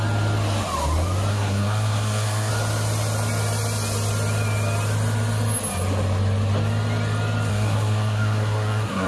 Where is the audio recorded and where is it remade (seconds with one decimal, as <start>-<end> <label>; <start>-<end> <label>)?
0.0-1.3 recorded; 1.3-2.5 remade; 2.5-7.5 recorded; 7.5-9.1 remade